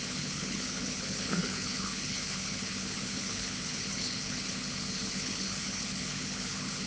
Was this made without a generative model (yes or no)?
no